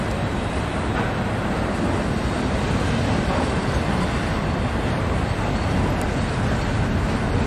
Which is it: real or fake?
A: real